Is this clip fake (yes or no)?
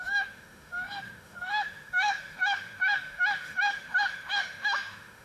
yes